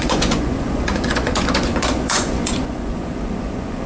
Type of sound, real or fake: fake